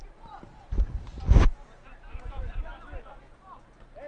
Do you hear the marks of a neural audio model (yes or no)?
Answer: no